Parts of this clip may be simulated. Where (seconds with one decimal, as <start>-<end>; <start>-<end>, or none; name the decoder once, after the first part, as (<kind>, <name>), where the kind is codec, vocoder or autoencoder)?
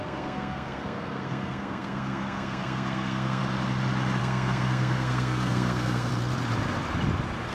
0.0-3.4 (codec, SNAC); 4.2-6.1